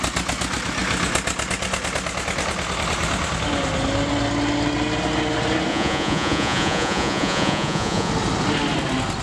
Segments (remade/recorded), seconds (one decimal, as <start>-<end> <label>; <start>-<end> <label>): 0.0-5.7 recorded; 5.7-8.1 remade; 8.1-9.2 recorded